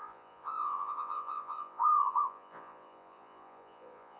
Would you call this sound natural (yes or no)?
no